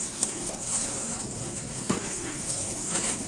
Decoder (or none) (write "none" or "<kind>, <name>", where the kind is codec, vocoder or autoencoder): codec, SNAC